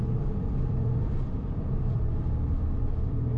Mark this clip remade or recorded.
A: remade